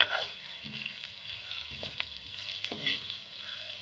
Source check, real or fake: fake